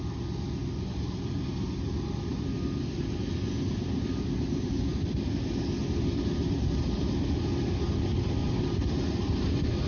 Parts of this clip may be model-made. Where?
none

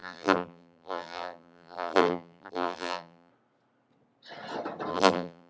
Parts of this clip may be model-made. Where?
0.0-3.3; 4.9-5.5

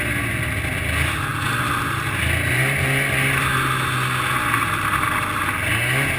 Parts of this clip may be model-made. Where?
none

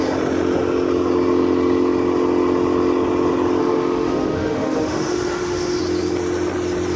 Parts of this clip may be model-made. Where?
3.6-5.8

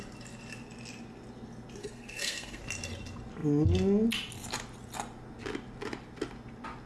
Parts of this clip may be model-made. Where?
1.8-2.6

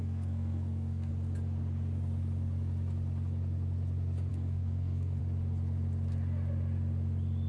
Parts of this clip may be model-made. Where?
0.0-1.1; 4.3-5.2